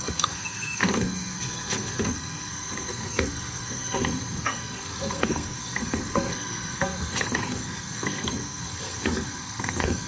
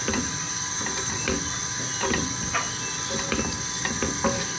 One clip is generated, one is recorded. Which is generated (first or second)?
first